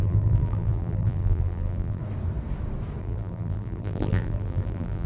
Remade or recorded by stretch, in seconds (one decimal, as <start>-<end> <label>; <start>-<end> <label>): 0.0-2.0 remade; 2.0-3.0 recorded; 3.0-5.1 remade